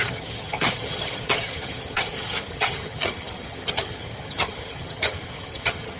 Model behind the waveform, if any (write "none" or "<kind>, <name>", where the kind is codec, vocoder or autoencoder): vocoder, HiFi-GAN